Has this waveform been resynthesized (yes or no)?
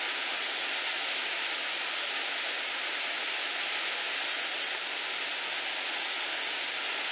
no